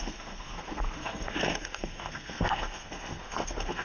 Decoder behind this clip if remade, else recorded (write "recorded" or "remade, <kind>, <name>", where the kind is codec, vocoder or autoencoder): remade, codec, SNAC